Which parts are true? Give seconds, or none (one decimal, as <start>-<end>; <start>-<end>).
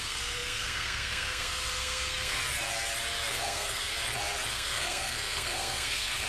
2.4-3.3; 3.9-4.5